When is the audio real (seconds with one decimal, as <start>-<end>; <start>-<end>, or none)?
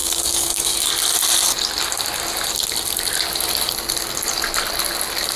0.9-5.4